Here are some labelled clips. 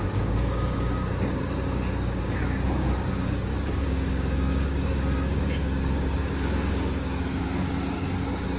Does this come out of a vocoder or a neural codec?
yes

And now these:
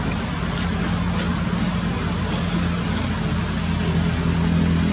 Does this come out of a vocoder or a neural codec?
no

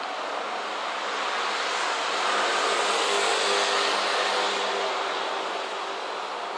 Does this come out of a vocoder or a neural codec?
no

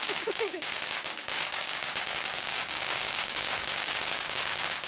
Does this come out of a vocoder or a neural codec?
yes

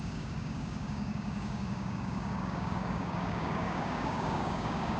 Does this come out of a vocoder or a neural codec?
yes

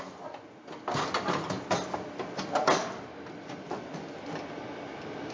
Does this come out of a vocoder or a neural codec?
no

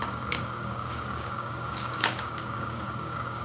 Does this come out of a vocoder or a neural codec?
yes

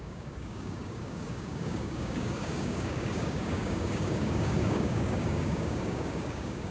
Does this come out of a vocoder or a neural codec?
yes